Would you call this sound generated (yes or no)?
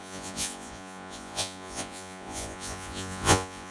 yes